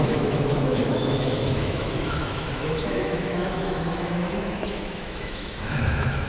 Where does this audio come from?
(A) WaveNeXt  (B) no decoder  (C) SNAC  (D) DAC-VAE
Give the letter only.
D